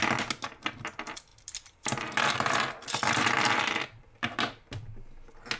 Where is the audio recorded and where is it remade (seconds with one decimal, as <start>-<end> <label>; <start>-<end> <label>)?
0.0-1.3 recorded; 1.3-4.7 remade; 4.7-5.6 recorded